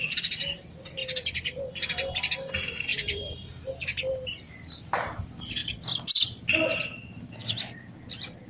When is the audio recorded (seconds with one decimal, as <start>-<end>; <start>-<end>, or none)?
0.0-2.9; 4.1-8.5

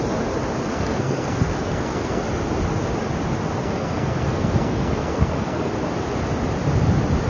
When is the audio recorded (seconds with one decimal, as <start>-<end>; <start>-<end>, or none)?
0.0-0.7; 2.2-3.6; 5.7-7.3